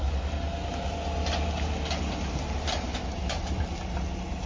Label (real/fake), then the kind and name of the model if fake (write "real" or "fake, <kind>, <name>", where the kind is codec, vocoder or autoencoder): real